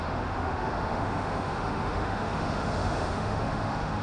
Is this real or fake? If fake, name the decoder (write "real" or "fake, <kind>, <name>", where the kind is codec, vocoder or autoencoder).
fake, autoencoder, DAC-VAE